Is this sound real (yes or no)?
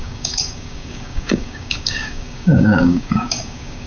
no